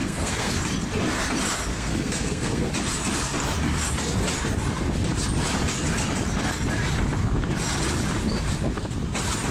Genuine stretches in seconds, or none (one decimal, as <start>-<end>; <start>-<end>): 0.5-1.7; 2.7-9.5